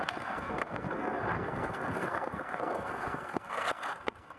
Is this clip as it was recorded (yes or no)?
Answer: no